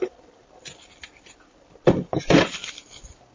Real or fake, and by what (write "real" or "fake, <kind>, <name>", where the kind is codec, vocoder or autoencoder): fake, vocoder, BigVGAN v2